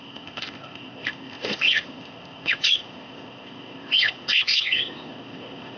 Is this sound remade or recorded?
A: remade